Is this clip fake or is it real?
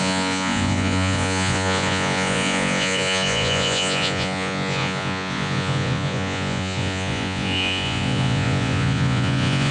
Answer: fake